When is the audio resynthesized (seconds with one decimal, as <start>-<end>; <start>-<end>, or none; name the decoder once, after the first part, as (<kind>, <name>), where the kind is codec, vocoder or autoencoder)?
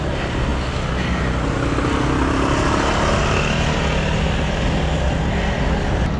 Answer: none